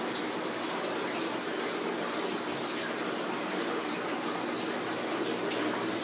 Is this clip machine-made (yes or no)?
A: no